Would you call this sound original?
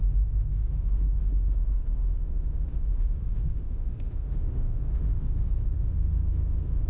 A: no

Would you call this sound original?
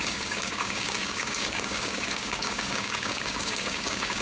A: no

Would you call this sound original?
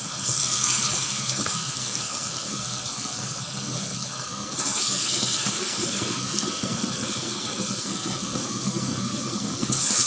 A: no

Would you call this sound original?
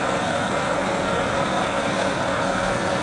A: no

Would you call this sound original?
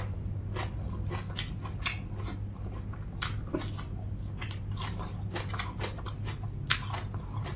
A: yes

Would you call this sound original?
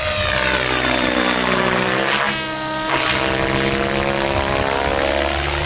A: yes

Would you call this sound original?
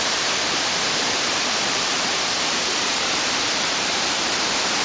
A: no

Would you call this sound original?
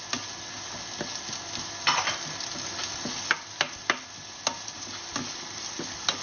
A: yes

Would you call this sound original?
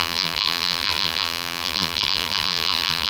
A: no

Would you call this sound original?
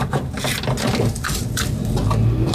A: yes